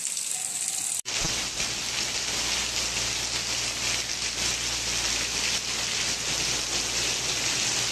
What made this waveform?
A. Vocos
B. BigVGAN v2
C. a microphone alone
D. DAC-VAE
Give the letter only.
C